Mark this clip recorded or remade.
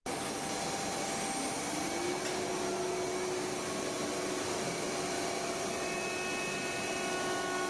recorded